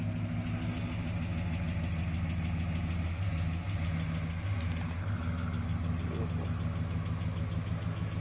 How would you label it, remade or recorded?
recorded